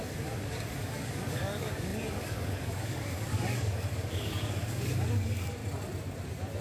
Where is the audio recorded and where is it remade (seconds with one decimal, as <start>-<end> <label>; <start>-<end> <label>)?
0.0-5.6 remade; 5.6-6.6 recorded